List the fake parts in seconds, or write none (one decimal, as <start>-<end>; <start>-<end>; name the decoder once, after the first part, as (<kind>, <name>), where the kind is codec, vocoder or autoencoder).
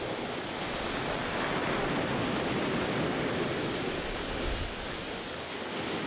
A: none